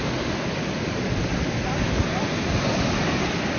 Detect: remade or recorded recorded